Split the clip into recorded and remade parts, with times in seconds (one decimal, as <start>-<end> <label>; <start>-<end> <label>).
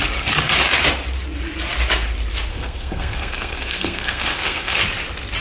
0.0-2.5 recorded; 2.5-4.8 remade; 4.8-5.4 recorded